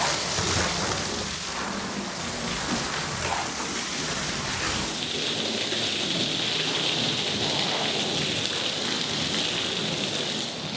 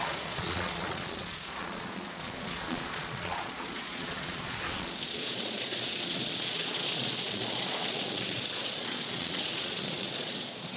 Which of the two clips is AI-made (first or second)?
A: second